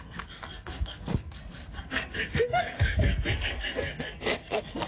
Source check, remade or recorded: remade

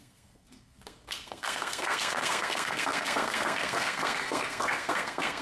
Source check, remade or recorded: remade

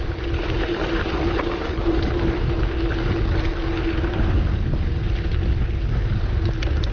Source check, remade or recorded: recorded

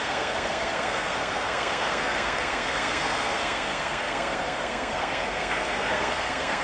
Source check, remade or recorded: remade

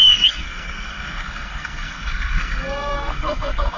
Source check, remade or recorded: remade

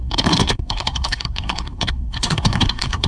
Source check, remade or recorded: remade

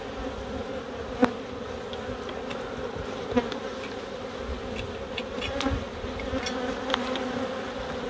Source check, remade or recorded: recorded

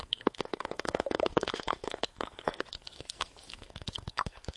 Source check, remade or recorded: remade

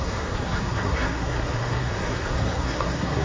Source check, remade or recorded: remade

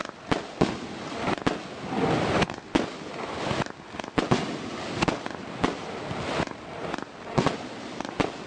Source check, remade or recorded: recorded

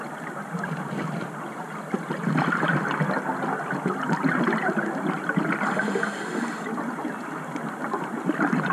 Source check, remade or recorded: recorded